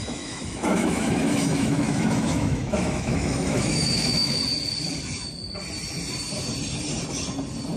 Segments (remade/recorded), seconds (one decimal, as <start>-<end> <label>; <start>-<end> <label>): 0.0-4.4 remade; 4.4-7.8 recorded